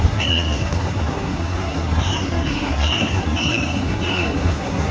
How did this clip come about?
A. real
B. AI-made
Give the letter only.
B